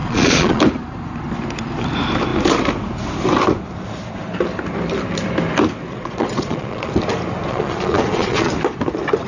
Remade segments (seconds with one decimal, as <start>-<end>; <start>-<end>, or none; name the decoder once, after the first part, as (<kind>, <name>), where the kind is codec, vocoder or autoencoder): 0.0-0.6 (vocoder, Vocos); 5.9-6.9; 7.5-8.5

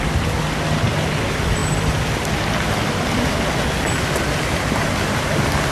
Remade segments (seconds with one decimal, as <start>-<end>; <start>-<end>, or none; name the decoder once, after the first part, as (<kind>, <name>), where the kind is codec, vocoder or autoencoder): none

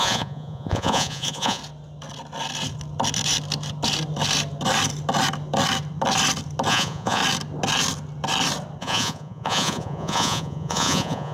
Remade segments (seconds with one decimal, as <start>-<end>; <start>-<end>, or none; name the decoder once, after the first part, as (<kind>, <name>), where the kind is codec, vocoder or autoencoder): 0.0-1.6 (vocoder, Vocos); 6.7-7.2; 8.8-11.3